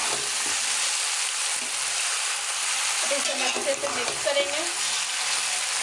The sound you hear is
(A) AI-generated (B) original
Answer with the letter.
B